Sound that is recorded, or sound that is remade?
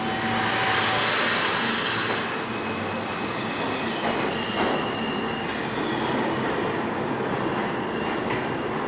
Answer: recorded